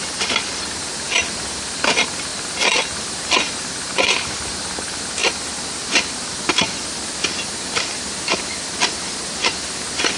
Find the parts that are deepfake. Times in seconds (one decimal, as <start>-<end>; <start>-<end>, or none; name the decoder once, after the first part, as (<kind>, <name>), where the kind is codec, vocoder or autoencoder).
none